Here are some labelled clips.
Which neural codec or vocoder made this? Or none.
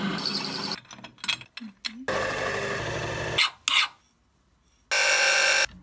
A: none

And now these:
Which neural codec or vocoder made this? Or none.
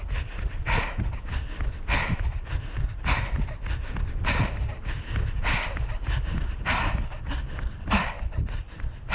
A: none